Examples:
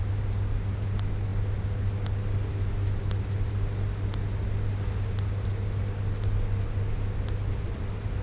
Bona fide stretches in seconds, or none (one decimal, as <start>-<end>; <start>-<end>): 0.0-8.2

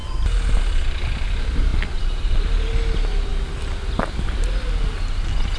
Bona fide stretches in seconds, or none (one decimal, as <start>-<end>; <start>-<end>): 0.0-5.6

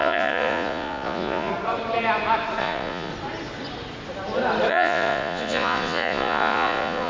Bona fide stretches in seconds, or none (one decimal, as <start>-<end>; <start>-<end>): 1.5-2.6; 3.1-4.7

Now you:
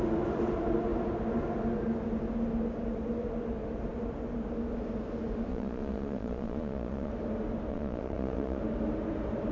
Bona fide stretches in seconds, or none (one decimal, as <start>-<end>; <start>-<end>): 0.0-5.5; 7.1-7.7; 8.6-9.5

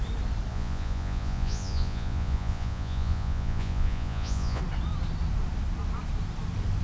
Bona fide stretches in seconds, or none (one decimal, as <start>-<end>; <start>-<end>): 0.0-0.5; 4.6-6.8

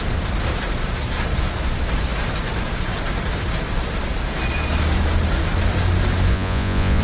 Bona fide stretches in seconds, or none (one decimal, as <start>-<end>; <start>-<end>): 0.0-6.3

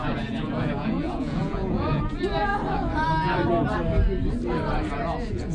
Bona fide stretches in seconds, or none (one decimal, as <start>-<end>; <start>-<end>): 2.5-4.9

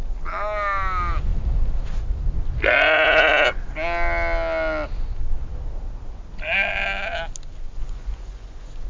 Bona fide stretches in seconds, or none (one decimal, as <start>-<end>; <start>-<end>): 0.0-7.8